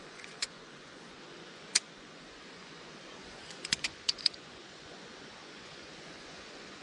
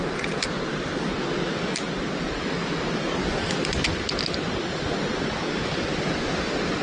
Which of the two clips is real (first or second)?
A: second